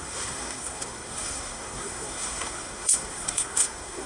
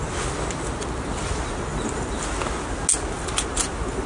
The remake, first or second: first